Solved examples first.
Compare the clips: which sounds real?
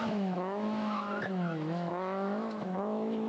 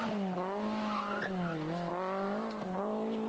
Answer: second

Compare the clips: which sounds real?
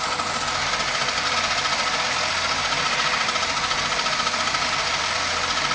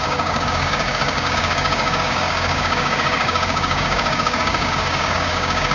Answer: first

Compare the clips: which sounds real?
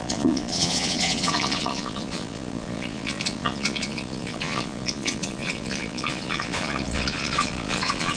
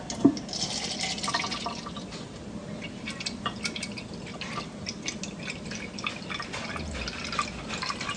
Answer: second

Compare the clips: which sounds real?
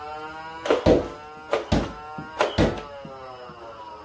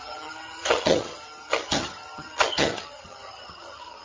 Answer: first